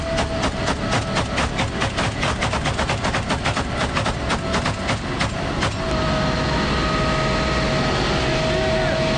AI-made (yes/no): no